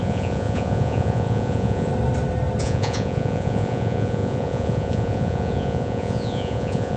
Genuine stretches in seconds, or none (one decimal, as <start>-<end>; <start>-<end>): 1.9-2.6